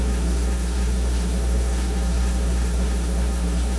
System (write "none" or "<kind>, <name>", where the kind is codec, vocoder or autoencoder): codec, SNAC